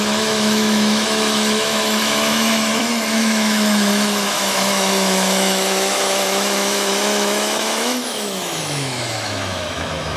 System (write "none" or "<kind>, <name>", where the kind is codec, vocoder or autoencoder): autoencoder, DAC-VAE